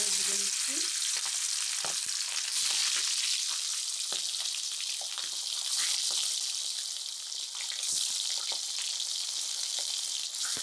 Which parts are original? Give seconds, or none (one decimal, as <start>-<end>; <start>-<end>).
0.0-10.6